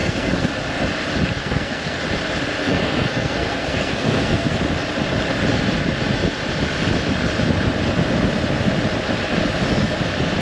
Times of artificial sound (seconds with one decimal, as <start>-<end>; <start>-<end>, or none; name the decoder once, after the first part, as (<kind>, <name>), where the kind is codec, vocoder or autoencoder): 0.0-0.5 (codec, SNAC); 1.4-2.0; 2.6-4.6